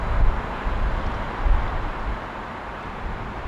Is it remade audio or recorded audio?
recorded